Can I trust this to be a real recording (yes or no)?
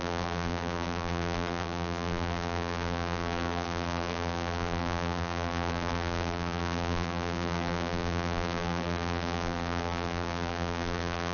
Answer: no